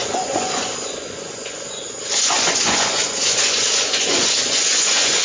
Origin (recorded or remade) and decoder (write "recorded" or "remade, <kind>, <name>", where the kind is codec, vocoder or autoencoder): remade, vocoder, Vocos